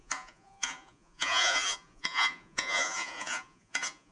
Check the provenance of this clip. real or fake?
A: fake